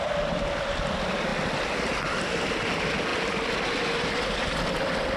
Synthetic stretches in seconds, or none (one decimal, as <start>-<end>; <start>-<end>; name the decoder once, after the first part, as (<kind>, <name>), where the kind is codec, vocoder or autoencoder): none